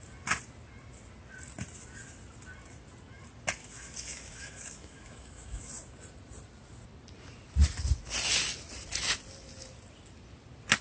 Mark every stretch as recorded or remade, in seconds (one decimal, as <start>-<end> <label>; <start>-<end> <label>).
0.0-3.6 recorded; 3.6-5.7 remade; 5.7-10.8 recorded